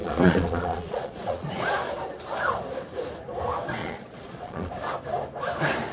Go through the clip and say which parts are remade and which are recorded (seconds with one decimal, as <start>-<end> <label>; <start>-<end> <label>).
0.0-1.7 remade; 1.7-3.8 recorded; 3.8-4.7 remade; 4.7-5.9 recorded